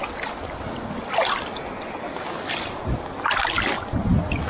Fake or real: real